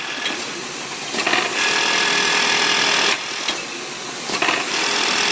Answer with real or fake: real